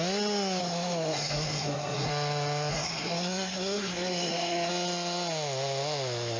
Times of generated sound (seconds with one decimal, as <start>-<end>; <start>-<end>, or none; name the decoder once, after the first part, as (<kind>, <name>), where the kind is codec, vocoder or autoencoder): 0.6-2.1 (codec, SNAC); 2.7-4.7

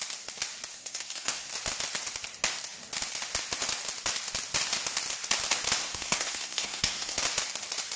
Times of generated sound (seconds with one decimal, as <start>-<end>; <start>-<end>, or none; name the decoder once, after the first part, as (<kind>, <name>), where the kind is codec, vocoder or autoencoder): 0.7-1.5 (codec, SNAC); 5.8-7.2

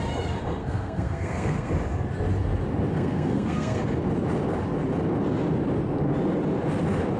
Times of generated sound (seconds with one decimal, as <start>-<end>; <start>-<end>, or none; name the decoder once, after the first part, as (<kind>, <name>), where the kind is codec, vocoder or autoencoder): 0.6-1.7 (codec, SNAC); 2.9-3.8